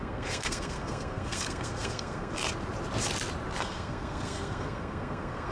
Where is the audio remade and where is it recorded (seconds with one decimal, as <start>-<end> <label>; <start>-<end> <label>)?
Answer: 0.0-2.4 remade; 2.4-3.6 recorded; 3.6-5.5 remade